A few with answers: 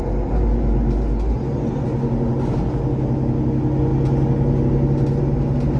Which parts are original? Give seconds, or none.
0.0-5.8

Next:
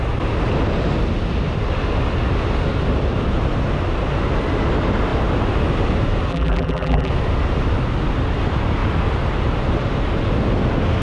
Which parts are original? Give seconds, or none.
0.0-6.3; 7.1-11.0

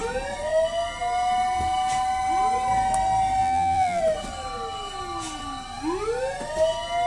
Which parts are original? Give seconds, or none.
0.0-3.4; 4.0-7.1

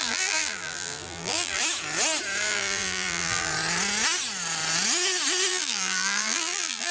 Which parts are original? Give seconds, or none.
1.6-2.4; 3.5-5.5

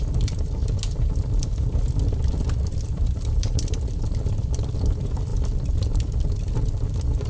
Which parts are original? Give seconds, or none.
0.6-2.3

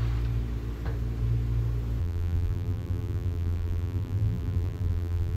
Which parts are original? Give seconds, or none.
0.0-2.0